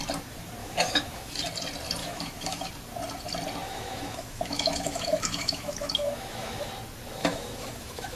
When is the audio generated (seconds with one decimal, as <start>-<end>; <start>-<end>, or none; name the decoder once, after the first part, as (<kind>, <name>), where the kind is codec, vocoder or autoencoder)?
0.6-1.4 (autoencoder, DAC-VAE); 2.0-2.7; 3.6-6.7; 7.2-8.2